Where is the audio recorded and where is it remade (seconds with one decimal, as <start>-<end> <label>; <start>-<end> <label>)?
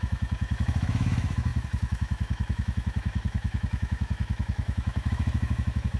0.0-6.0 remade